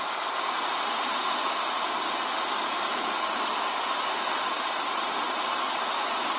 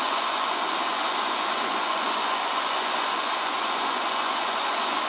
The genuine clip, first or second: first